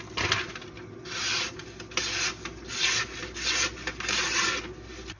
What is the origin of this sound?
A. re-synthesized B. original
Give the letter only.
B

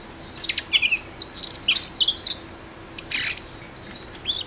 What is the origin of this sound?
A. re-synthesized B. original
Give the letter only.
B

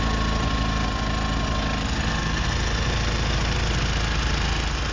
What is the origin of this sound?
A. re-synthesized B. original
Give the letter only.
B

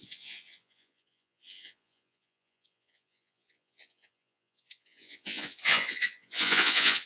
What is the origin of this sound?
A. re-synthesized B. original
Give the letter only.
A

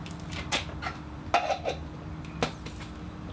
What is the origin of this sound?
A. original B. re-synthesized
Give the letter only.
A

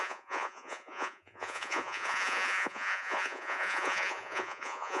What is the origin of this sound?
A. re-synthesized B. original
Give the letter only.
A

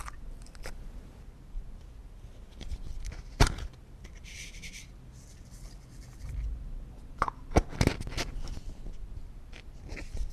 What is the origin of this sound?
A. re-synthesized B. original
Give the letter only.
B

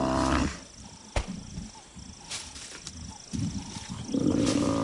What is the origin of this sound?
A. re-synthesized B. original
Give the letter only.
B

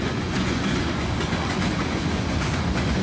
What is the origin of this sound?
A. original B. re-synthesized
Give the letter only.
B